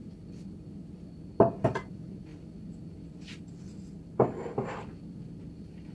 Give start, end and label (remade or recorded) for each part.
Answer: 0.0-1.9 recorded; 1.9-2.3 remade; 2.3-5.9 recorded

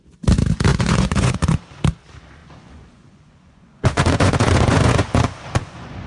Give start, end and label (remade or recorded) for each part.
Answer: 0.0-0.7 recorded; 0.7-1.6 remade; 1.6-2.4 recorded; 2.4-6.1 remade

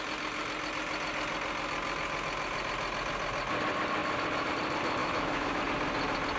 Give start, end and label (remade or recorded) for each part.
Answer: 0.0-5.0 recorded; 5.0-5.6 remade; 5.6-6.4 recorded